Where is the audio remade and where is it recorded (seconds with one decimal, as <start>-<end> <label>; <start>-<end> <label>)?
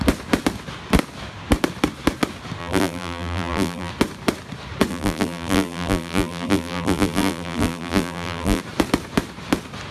0.0-2.6 recorded; 2.6-3.9 remade; 3.9-4.9 recorded; 4.9-8.6 remade; 8.6-9.9 recorded